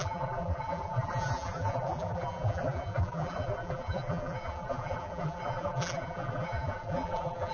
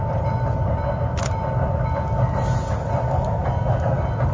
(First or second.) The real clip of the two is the second